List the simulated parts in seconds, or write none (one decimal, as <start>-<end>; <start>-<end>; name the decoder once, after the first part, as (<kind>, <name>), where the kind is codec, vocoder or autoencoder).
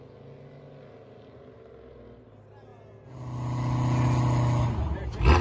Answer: none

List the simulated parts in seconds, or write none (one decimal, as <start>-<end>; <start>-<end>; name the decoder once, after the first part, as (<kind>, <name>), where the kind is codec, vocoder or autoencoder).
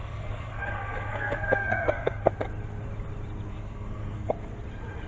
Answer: 0.0-2.3 (codec, SNAC); 3.5-4.3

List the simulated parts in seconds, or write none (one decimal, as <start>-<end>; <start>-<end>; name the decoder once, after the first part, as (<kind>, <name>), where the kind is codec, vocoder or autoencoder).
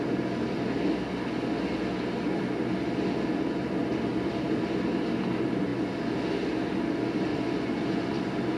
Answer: 7.3-8.2 (vocoder, Vocos)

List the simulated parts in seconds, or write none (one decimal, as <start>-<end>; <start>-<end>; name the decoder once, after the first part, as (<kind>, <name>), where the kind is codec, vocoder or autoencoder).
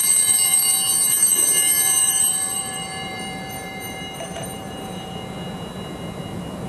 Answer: 2.0-5.1 (vocoder, BigVGAN v2)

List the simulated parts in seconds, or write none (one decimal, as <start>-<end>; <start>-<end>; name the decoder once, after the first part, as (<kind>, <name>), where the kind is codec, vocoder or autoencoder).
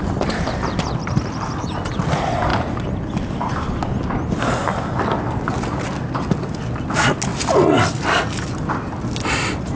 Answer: none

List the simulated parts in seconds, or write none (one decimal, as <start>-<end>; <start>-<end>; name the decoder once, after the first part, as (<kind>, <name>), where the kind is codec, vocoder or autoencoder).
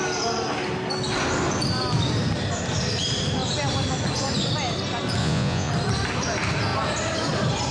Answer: 5.2-5.7 (vocoder, Vocos)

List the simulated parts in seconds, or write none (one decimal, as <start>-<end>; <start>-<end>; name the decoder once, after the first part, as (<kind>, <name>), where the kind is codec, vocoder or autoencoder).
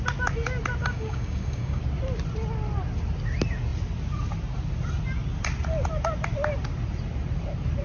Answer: 0.8-1.8 (codec, DAC)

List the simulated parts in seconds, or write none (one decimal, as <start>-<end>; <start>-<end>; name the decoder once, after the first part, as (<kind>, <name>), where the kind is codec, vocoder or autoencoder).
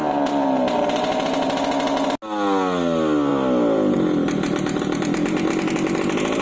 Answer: none